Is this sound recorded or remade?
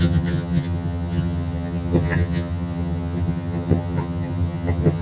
remade